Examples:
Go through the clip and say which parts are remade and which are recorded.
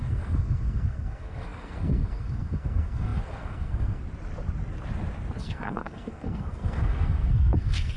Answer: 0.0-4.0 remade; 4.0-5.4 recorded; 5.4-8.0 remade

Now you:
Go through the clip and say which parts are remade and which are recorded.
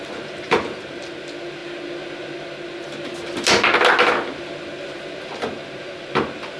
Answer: 0.0-6.6 recorded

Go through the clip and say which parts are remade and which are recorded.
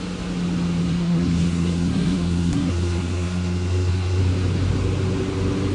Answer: 0.0-0.8 recorded; 0.8-4.2 remade; 4.2-5.7 recorded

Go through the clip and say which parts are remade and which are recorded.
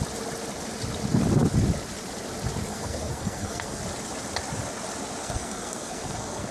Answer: 0.0-2.7 recorded; 2.7-3.8 remade; 3.8-5.2 recorded; 5.2-6.5 remade